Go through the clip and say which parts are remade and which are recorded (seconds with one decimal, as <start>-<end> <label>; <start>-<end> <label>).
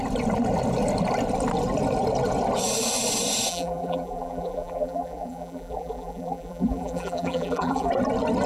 0.0-3.5 recorded; 3.5-7.9 remade; 7.9-8.5 recorded